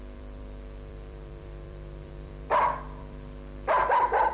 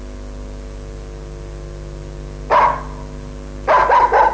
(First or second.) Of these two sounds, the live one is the second